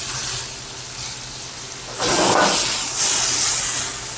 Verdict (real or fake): real